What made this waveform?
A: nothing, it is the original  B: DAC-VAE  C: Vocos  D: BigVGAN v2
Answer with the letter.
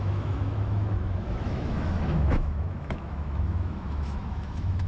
B